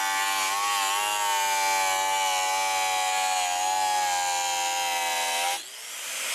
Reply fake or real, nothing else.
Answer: real